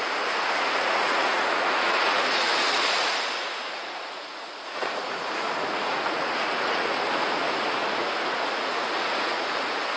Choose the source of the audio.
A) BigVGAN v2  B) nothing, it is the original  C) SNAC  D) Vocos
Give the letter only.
D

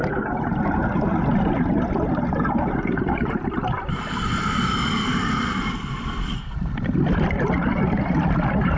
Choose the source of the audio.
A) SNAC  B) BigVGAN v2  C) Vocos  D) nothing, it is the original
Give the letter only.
B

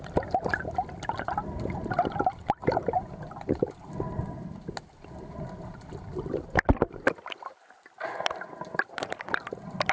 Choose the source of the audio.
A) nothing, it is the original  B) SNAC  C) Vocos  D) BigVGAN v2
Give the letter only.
D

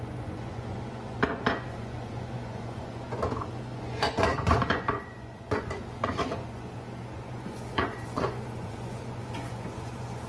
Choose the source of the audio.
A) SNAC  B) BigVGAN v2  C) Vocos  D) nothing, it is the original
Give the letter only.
C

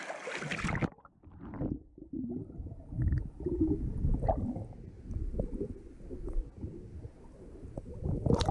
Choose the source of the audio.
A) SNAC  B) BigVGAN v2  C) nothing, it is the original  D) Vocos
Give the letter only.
C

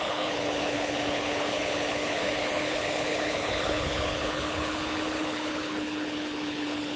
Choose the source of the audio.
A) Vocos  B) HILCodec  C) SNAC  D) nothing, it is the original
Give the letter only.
B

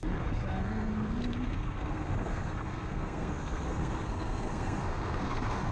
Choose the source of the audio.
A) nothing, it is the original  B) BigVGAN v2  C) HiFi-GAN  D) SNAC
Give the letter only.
D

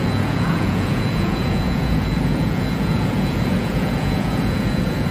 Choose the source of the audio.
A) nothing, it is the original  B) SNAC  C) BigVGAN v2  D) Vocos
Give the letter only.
D